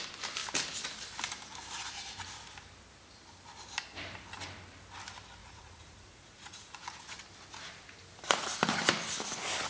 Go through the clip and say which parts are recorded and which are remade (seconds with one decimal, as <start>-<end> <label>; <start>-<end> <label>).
0.0-5.4 recorded; 5.4-7.0 remade; 7.0-9.7 recorded